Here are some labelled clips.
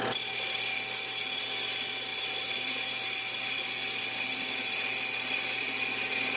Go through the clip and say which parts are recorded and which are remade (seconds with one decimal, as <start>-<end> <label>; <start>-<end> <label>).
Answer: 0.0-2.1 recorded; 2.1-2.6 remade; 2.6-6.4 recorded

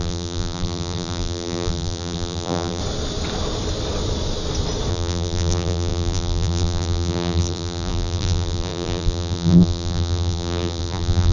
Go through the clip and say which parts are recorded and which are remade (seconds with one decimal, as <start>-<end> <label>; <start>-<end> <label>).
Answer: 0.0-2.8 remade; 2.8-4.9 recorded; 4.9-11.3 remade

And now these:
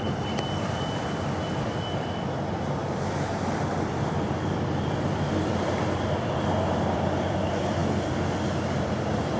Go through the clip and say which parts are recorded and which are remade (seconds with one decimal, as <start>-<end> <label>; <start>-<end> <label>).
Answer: 0.0-2.8 remade; 2.8-3.7 recorded; 3.7-7.8 remade; 7.8-8.8 recorded; 8.8-9.4 remade

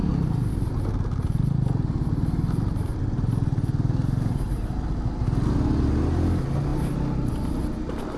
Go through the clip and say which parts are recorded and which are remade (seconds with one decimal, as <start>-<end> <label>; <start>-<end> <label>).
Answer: 0.0-0.5 remade; 0.5-2.9 recorded; 2.9-4.9 remade; 4.9-6.7 recorded; 6.7-7.3 remade; 7.3-8.2 recorded

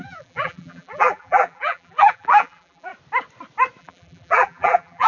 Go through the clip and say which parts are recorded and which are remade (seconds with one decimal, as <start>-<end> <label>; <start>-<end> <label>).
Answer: 0.0-2.9 remade; 2.9-3.8 recorded; 3.8-5.1 remade

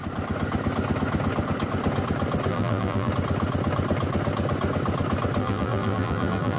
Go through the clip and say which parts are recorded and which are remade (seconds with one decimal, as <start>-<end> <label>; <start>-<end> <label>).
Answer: 0.0-2.5 recorded; 2.5-3.1 remade; 3.1-5.4 recorded; 5.4-6.6 remade